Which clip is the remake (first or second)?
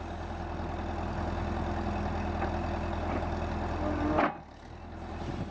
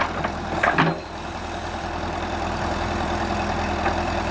second